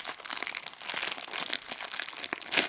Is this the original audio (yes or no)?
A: yes